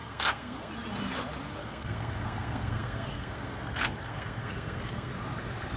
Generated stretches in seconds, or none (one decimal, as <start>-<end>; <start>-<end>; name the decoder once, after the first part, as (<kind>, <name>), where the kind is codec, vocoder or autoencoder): 0.0-0.7 (codec, SNAC); 1.6-5.1